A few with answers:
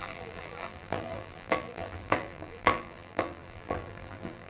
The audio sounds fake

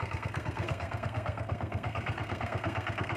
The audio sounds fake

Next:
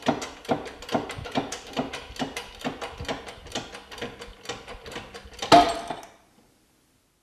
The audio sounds real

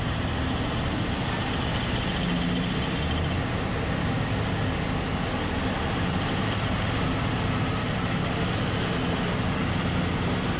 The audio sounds real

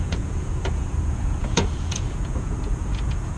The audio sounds fake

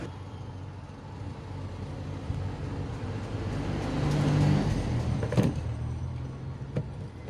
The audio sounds real